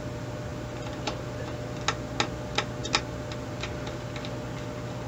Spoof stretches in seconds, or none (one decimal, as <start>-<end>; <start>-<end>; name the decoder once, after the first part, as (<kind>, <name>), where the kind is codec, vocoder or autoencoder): none